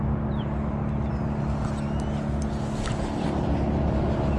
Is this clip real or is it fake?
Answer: real